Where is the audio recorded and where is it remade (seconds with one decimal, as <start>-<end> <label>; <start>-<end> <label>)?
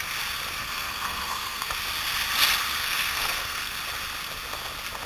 0.0-0.6 recorded; 0.6-1.7 remade; 1.7-2.8 recorded; 2.8-3.8 remade; 3.8-5.1 recorded